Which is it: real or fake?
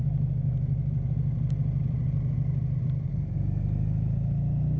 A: real